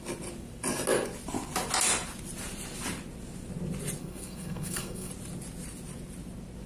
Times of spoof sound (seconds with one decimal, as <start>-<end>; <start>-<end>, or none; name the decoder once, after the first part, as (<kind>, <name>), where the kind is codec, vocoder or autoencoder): 4.0-5.1 (codec, SNAC)